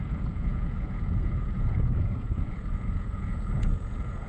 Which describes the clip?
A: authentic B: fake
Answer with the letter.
B